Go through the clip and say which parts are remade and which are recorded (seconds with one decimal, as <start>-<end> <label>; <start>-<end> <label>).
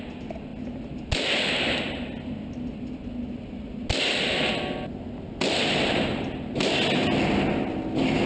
0.0-8.3 recorded